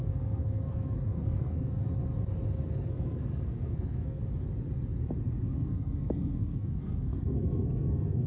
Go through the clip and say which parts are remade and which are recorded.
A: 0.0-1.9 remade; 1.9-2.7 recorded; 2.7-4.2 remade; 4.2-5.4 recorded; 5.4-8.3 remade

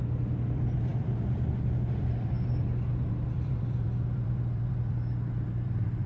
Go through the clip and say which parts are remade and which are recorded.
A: 0.0-0.9 recorded; 0.9-1.5 remade; 1.5-2.0 recorded; 2.0-6.1 remade

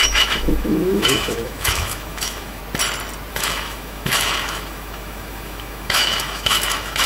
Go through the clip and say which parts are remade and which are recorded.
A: 0.0-2.6 remade; 2.6-3.3 recorded; 3.3-7.1 remade

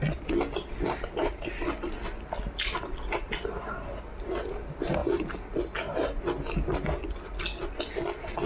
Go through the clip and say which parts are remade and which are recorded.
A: 0.0-8.5 recorded

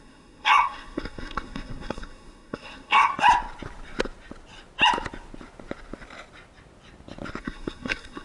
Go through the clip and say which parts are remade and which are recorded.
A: 0.0-3.1 remade; 3.1-7.4 recorded; 7.4-8.2 remade